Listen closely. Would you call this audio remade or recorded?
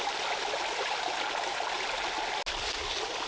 recorded